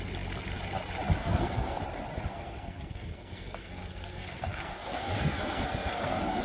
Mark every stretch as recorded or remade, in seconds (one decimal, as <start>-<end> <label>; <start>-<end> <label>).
0.0-1.2 recorded; 1.2-1.8 remade; 1.8-2.3 recorded; 2.3-6.4 remade